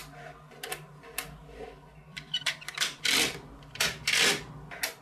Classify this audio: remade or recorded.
recorded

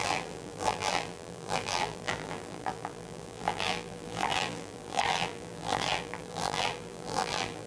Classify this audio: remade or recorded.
remade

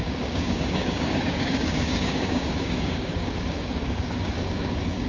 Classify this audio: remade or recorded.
remade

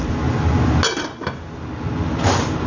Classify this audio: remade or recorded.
recorded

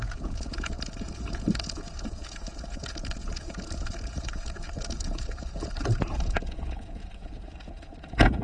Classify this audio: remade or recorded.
remade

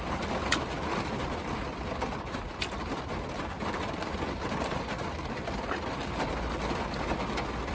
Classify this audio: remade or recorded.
recorded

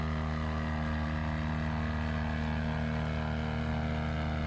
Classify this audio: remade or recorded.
recorded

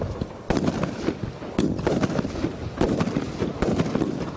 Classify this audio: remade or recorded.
recorded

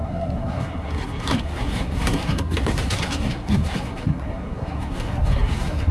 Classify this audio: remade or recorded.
remade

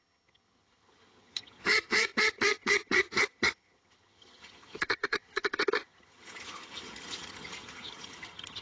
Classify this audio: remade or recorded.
remade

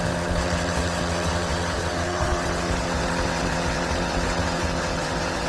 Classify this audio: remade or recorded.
remade